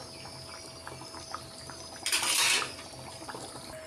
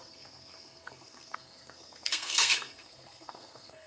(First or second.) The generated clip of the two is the second